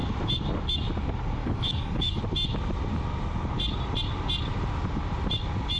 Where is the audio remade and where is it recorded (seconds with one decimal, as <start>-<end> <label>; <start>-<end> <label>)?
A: 0.0-1.4 recorded; 1.4-2.2 remade; 2.2-5.8 recorded